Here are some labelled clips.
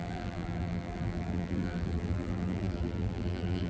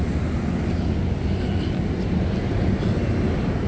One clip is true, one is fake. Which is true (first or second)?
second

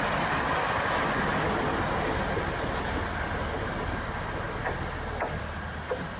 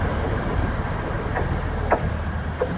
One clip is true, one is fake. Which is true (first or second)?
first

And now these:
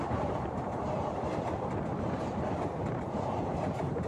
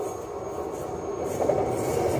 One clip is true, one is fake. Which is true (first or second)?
second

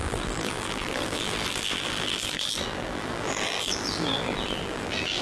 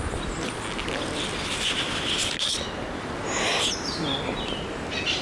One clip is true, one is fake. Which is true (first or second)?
second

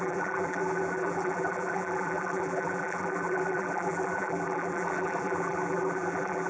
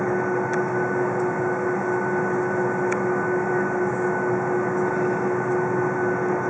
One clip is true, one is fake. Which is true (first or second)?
second